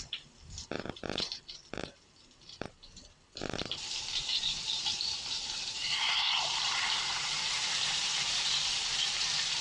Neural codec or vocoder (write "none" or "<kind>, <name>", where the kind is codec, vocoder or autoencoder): vocoder, BigVGAN v2